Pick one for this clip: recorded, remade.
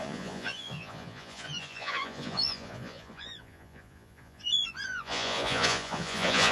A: remade